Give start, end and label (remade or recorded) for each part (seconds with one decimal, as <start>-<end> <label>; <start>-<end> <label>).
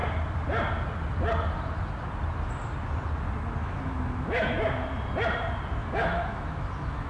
0.0-3.6 recorded; 3.6-4.6 remade; 4.6-5.8 recorded; 5.8-7.1 remade